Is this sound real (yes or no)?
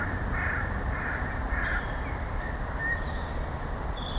yes